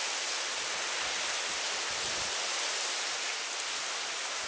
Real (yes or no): yes